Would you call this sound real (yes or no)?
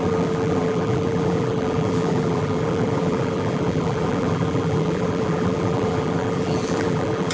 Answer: no